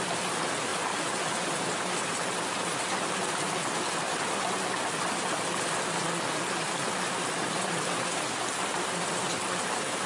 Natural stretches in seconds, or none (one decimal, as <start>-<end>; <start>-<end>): 0.0-10.1